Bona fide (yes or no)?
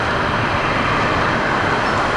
yes